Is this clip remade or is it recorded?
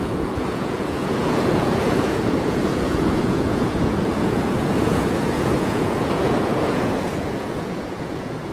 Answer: remade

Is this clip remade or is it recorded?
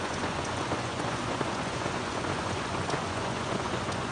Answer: remade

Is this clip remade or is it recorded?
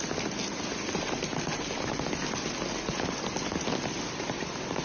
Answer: recorded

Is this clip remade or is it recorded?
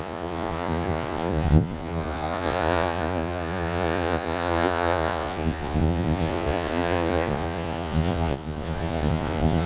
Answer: remade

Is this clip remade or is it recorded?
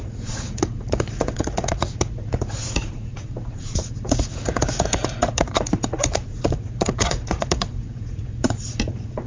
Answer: remade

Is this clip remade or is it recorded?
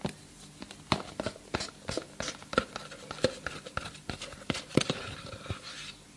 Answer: recorded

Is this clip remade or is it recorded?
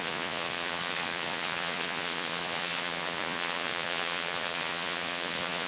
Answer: remade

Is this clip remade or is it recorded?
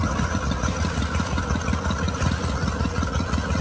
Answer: remade